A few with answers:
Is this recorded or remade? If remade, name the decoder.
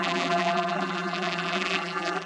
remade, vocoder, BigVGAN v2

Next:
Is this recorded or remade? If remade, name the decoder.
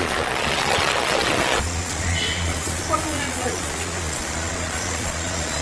remade, vocoder, Vocos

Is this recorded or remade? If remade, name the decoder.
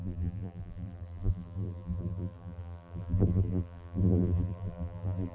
remade, vocoder, BigVGAN v2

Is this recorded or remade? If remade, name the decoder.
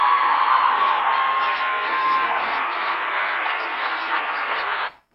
remade, codec, SNAC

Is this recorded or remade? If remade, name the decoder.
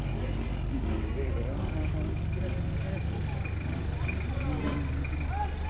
recorded